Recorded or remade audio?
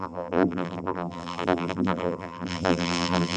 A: remade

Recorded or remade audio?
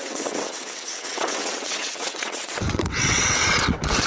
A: remade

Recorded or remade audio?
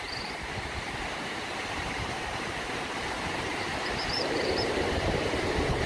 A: remade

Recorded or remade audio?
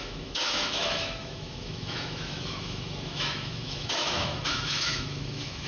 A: remade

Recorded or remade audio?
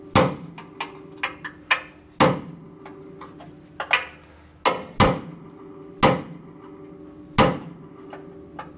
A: recorded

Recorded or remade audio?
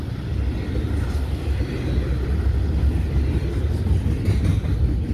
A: recorded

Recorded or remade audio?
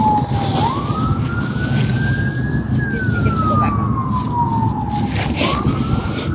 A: recorded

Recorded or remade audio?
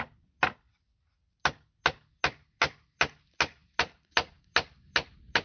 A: recorded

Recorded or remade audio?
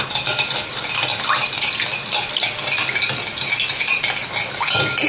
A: recorded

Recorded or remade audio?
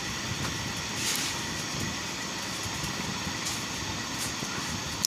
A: recorded